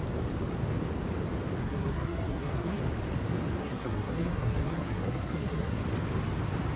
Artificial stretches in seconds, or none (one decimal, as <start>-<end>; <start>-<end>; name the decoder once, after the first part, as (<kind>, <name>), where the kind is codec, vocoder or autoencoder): 1.6-2.8 (codec, SNAC); 3.6-5.8